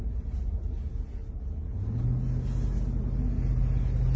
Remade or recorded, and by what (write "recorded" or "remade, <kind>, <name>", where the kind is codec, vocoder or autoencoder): recorded